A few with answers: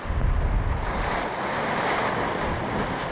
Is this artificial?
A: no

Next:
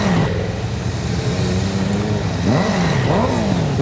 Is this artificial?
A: no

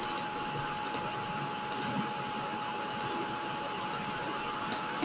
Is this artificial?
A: no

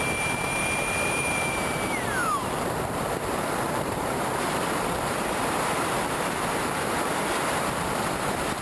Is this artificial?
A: yes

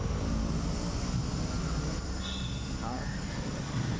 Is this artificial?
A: no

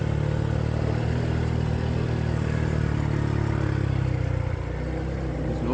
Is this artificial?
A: no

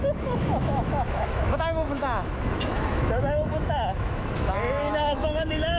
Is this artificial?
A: yes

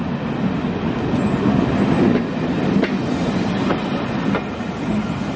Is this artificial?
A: no